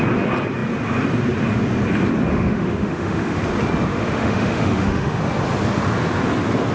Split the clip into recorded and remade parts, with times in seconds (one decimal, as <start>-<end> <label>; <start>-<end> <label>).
0.0-2.3 recorded; 2.3-3.4 remade; 3.4-3.9 recorded; 3.9-5.2 remade; 5.2-6.7 recorded